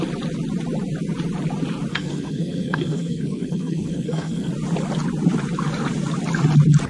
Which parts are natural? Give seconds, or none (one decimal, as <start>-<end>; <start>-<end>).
0.0-1.9; 4.5-6.9